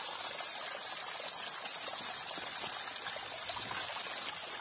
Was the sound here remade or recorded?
recorded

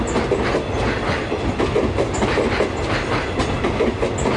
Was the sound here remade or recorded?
recorded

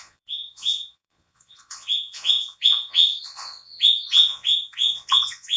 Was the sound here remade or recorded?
remade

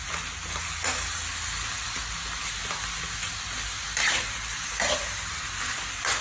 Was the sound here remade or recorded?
recorded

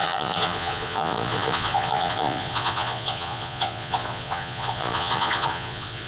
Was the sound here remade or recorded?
remade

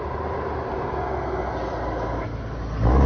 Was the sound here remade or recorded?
recorded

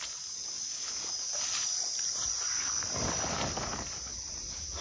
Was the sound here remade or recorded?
recorded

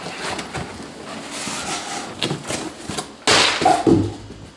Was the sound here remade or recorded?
recorded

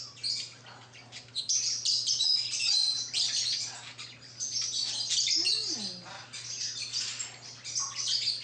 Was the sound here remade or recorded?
recorded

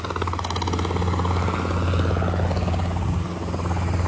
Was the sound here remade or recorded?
recorded